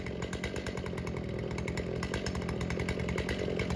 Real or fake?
real